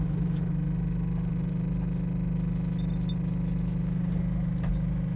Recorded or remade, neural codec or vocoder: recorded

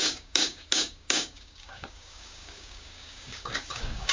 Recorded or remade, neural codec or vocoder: remade, codec, DAC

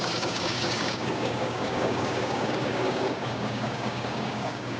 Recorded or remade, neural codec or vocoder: remade, codec, DAC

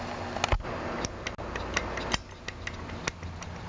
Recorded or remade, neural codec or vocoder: recorded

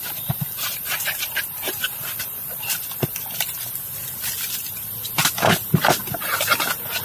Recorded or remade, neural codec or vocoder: recorded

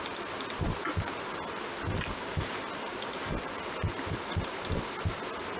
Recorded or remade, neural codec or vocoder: recorded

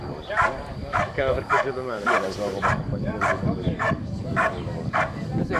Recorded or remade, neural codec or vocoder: remade, codec, DAC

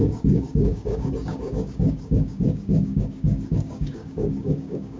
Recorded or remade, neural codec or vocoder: remade, codec, DAC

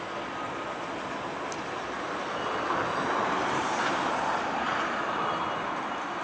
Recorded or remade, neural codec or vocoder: recorded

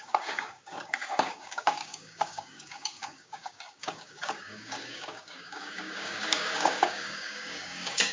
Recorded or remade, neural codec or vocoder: remade, codec, DAC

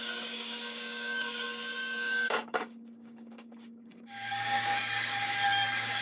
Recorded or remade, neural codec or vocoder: remade, codec, DAC